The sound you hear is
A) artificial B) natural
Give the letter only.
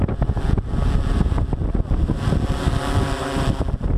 B